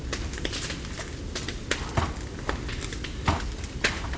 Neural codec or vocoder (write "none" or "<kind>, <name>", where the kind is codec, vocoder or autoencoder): none